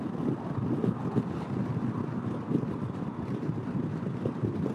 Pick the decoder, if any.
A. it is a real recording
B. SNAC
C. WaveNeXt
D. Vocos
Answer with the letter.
A